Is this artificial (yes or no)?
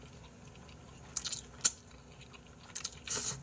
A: no